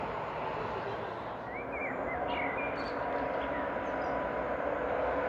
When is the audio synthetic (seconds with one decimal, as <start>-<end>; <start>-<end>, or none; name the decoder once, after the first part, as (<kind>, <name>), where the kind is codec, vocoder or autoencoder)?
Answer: none